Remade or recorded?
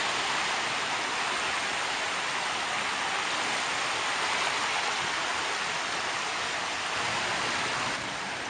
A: recorded